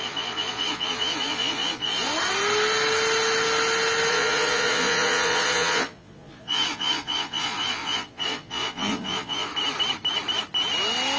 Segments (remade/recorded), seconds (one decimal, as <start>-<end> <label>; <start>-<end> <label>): 0.0-2.1 remade; 2.1-4.1 recorded; 4.1-9.5 remade; 9.5-11.2 recorded